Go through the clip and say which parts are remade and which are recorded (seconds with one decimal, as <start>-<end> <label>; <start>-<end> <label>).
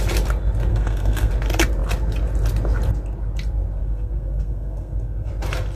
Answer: 0.0-0.7 recorded; 0.7-1.3 remade; 1.3-3.8 recorded; 3.8-5.3 remade; 5.3-5.8 recorded